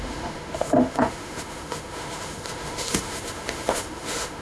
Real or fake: fake